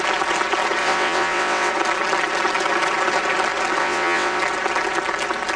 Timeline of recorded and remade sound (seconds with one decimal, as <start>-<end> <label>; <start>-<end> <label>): 0.0-0.8 recorded; 0.8-1.7 remade; 1.7-3.8 recorded; 3.8-4.4 remade; 4.4-5.6 recorded